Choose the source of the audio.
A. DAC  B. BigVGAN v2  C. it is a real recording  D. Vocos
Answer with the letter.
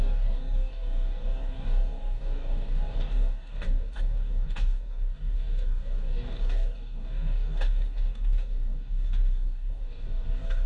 A